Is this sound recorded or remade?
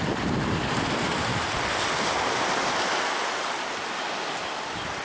recorded